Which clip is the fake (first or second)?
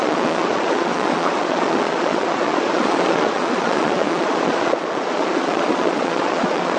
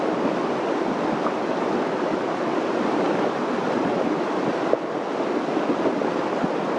first